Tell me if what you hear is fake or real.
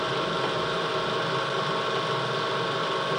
real